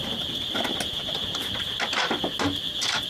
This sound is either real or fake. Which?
real